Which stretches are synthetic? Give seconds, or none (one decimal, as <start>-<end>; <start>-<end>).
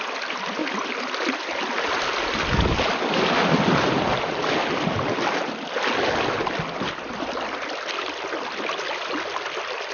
none